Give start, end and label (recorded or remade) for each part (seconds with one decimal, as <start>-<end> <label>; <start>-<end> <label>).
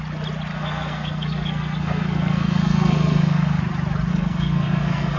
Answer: 0.0-0.5 recorded; 0.5-3.6 remade; 3.6-4.1 recorded; 4.1-5.2 remade